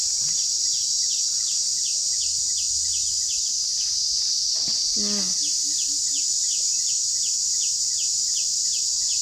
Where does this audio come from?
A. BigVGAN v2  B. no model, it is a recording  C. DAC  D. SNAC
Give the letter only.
B